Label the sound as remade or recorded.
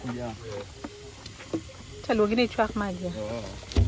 recorded